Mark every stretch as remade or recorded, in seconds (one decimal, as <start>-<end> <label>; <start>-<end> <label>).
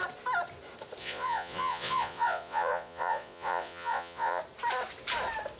0.0-1.0 recorded; 1.0-4.4 remade; 4.4-5.6 recorded